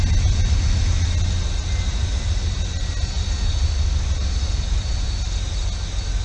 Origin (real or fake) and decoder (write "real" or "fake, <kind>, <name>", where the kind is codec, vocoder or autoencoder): real